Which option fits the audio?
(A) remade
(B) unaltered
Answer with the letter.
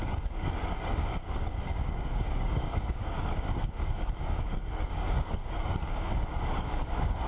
A